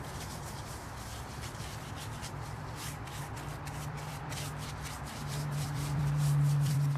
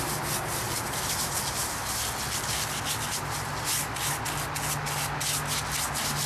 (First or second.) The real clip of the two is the second